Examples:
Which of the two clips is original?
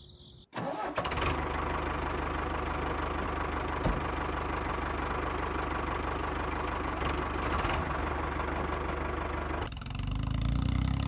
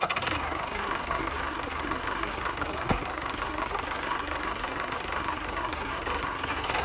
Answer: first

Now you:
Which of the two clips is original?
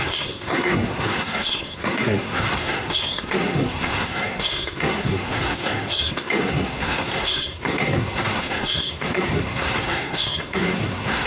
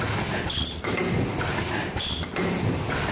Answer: second